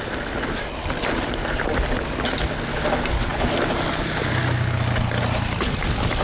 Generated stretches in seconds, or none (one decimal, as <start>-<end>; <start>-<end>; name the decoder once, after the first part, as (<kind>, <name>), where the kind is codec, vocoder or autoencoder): none

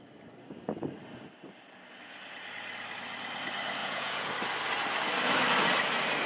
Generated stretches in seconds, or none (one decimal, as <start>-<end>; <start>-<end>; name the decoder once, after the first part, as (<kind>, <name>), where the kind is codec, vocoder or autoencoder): 3.8-4.3 (vocoder, Vocos)

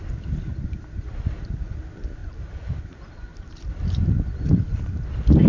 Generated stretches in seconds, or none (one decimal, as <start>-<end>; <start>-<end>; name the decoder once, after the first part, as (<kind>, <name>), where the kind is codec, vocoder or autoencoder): 0.5-1.3 (vocoder, BigVGAN v2); 2.2-3.7

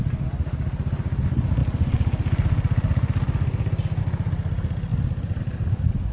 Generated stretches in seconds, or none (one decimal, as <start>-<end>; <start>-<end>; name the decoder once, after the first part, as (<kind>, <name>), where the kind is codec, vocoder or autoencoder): none

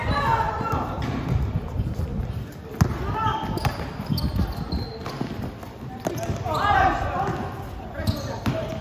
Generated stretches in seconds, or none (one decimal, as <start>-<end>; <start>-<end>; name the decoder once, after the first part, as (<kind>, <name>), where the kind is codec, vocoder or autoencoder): none